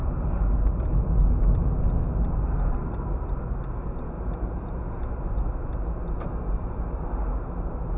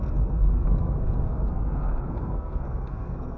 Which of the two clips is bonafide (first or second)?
first